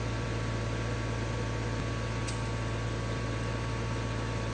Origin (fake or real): real